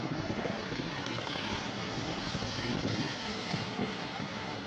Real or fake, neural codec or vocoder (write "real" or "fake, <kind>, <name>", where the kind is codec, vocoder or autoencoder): fake, codec, SNAC